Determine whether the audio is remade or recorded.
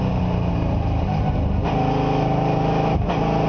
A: recorded